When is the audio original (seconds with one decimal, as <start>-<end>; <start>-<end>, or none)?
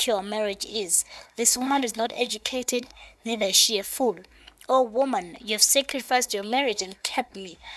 0.0-0.7; 4.4-5.9